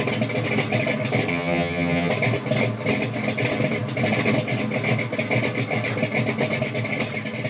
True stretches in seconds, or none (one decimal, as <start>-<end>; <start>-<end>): 0.0-1.3; 2.1-7.5